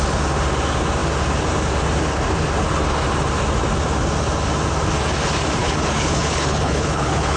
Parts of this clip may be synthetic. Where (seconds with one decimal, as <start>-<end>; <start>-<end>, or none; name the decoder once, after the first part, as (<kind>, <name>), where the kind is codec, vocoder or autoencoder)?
5.6-7.4 (codec, HILCodec)